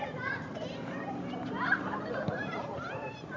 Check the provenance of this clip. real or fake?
fake